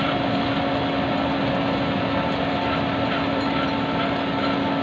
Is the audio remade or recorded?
recorded